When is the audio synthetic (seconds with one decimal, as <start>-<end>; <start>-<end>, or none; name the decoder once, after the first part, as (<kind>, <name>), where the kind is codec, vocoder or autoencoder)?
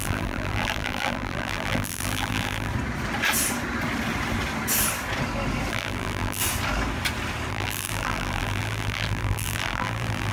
0.0-2.7 (vocoder, BigVGAN v2); 5.7-6.4; 7.5-10.3